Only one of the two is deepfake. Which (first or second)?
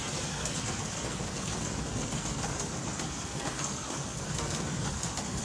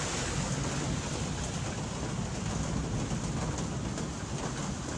first